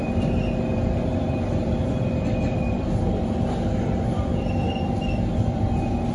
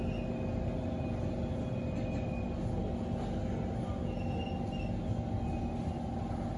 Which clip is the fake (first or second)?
first